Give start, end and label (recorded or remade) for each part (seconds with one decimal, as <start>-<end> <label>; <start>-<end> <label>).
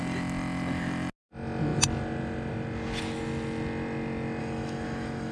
0.0-4.4 recorded; 4.4-5.3 remade